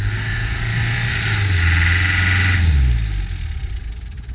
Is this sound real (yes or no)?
yes